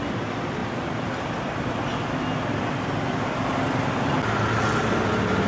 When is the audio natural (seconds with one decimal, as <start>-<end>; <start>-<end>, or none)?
0.0-5.5